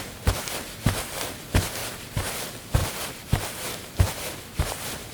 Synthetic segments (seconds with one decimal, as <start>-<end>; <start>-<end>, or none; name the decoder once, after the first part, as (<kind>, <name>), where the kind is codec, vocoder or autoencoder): 1.8-2.3 (vocoder, BigVGAN v2); 2.8-5.1